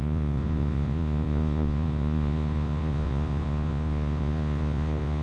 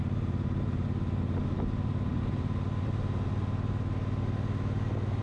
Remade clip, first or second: first